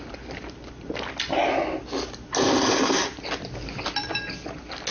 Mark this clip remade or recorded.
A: recorded